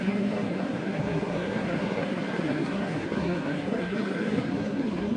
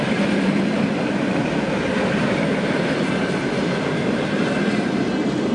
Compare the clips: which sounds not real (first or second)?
first